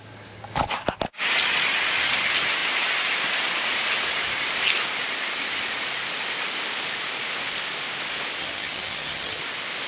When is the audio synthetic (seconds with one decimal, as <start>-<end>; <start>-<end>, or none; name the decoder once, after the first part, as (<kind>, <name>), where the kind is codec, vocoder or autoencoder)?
8.4-9.4 (vocoder, HiFi-GAN)